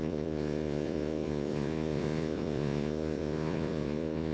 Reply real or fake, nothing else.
fake